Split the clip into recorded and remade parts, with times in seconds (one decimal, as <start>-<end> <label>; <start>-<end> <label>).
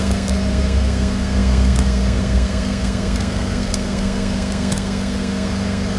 0.0-6.0 remade